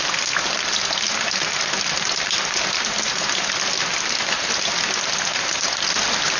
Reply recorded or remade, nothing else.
recorded